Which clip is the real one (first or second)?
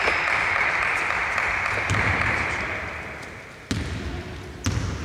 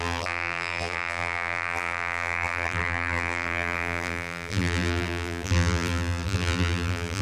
first